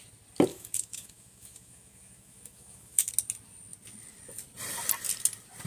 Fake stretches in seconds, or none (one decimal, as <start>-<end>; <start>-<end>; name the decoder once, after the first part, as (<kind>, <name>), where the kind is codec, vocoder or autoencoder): 0.5-3.1 (autoencoder, DAC-VAE)